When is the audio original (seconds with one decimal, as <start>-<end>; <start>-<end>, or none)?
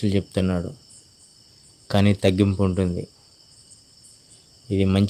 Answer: 0.0-0.4; 0.9-5.1